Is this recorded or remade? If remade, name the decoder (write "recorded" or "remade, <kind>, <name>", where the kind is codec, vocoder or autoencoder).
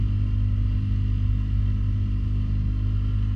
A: recorded